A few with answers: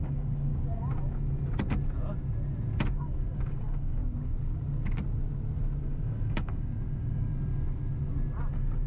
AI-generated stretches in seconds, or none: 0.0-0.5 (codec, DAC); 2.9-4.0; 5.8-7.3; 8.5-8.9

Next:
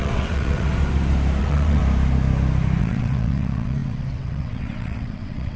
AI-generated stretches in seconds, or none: 0.0-0.7 (vocoder, WaveNeXt); 1.4-1.8; 2.8-5.6